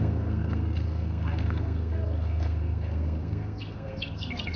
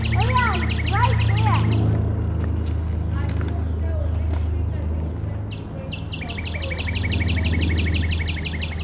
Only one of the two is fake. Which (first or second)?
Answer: first